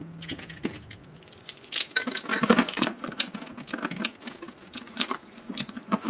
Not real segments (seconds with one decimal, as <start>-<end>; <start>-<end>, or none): 1.0-1.7; 2.3-3.2; 4.8-6.1